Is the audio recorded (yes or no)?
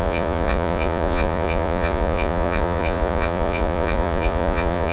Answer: no